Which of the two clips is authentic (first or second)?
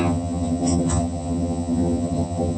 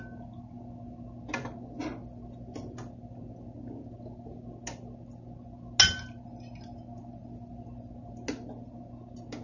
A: second